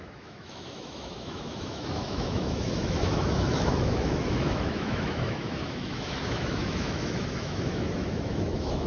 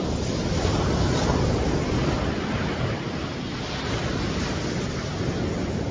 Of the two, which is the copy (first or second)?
first